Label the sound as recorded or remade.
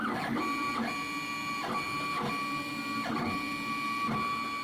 recorded